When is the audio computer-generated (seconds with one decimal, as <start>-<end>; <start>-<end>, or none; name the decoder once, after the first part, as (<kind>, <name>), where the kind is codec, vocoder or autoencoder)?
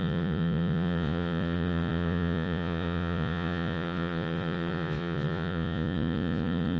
0.0-6.8 (vocoder, Vocos)